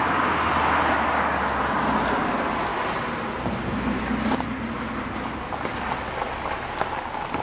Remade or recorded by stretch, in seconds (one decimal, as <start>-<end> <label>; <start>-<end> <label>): 0.0-7.4 recorded